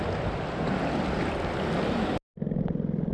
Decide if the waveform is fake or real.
real